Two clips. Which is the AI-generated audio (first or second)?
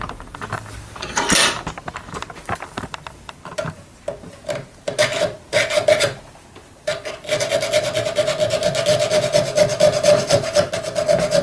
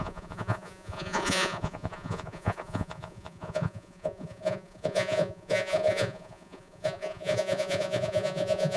second